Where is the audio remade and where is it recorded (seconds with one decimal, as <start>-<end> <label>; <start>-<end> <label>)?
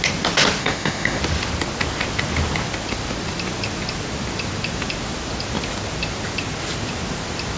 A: 0.0-0.6 recorded; 0.6-1.2 remade; 1.2-7.6 recorded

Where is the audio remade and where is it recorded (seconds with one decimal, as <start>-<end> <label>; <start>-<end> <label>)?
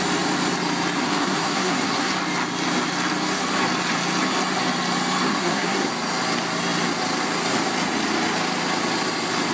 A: 0.0-1.0 recorded; 1.0-2.1 remade; 2.1-5.3 recorded; 5.3-5.9 remade; 5.9-9.5 recorded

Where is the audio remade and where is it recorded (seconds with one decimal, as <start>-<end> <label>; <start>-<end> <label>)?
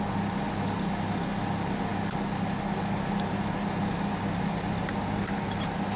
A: 0.0-6.0 recorded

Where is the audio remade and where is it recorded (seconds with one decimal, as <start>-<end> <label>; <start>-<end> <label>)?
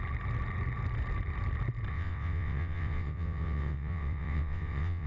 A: 0.0-1.9 recorded; 1.9-5.1 remade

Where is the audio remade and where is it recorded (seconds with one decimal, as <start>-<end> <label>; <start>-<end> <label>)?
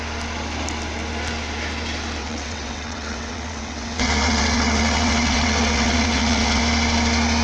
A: 0.0-2.2 recorded; 2.2-6.6 remade; 6.6-7.4 recorded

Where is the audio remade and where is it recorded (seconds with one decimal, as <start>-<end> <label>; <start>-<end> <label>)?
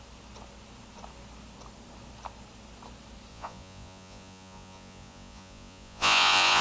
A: 0.0-3.3 recorded; 3.3-6.6 remade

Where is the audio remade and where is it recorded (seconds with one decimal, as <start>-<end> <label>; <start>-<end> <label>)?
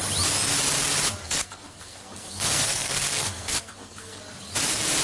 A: 0.0-1.2 recorded; 1.2-4.2 remade; 4.2-5.0 recorded